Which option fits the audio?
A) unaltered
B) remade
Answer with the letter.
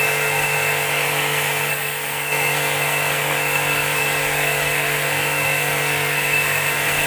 B